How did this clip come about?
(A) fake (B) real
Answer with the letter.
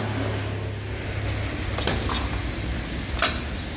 B